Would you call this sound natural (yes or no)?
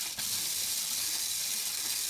yes